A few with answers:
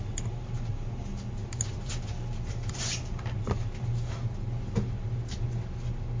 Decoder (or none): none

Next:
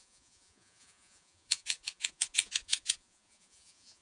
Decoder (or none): vocoder, Vocos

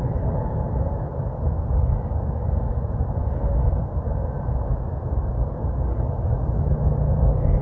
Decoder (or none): none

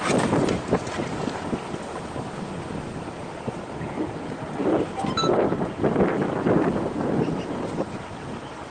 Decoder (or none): none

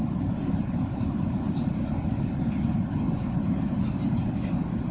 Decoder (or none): none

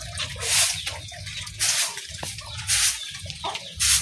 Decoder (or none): none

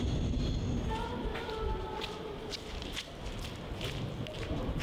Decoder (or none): none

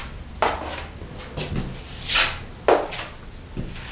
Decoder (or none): none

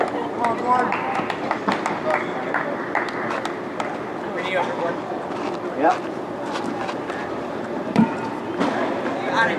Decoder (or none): none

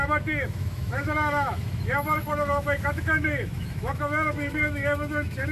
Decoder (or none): autoencoder, DAC-VAE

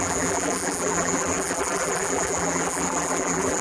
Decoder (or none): vocoder, BigVGAN v2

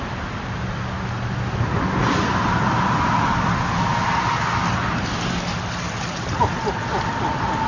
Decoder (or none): none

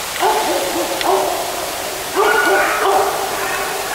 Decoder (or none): none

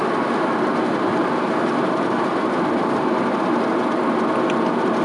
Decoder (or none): none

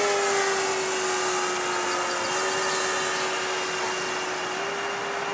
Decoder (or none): none